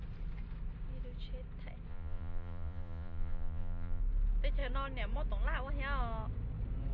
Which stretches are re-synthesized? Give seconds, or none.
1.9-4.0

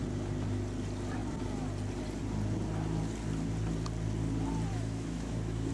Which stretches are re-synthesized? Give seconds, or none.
4.7-5.7

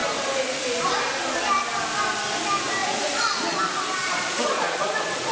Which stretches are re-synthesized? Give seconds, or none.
2.8-3.6; 4.0-5.3

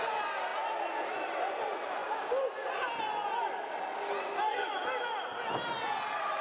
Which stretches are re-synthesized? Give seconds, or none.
none

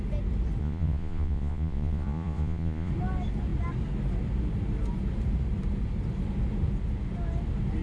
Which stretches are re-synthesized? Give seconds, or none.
0.6-2.9

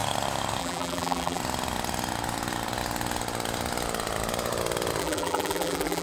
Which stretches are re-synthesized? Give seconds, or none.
0.6-1.4; 5.0-6.0